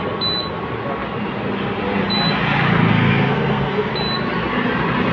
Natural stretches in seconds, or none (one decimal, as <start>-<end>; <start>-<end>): 0.0-2.9; 3.9-5.1